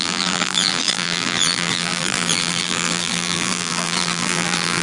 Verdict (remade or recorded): remade